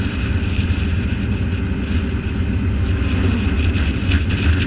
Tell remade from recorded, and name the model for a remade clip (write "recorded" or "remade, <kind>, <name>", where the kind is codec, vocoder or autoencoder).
recorded